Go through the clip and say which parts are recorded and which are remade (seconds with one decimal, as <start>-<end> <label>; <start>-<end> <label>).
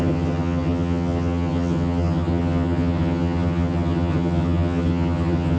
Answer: 0.0-5.6 remade